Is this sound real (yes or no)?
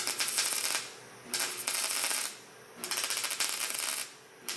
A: yes